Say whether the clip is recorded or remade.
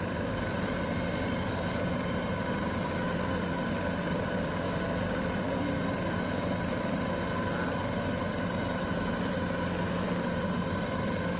recorded